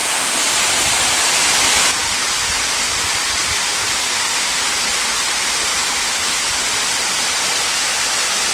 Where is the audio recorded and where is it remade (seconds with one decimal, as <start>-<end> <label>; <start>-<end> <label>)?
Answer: 0.0-5.7 recorded; 5.7-6.5 remade; 6.5-8.5 recorded